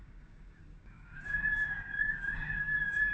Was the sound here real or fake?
fake